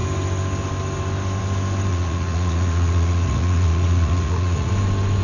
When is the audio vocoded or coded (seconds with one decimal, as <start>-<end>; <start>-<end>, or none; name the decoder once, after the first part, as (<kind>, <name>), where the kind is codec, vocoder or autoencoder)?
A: 1.9-4.7 (vocoder, Vocos)